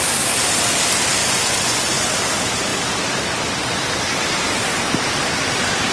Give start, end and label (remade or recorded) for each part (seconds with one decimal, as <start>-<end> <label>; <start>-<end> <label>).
0.0-1.2 recorded; 1.2-2.1 remade; 2.1-5.9 recorded